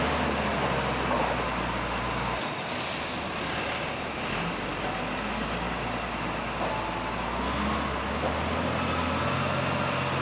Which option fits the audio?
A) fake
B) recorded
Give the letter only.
B